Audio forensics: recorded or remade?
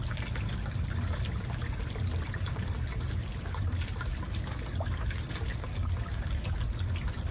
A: recorded